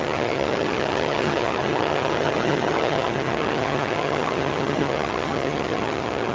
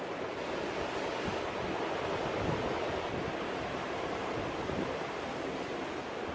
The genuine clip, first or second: second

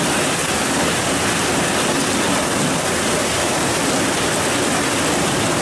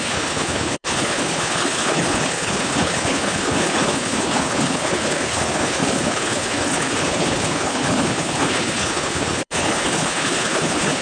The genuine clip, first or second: first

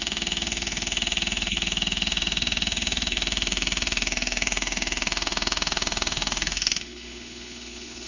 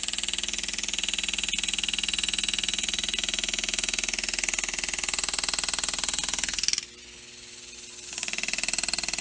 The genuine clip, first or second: second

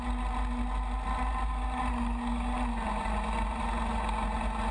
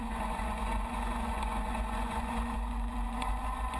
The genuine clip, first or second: first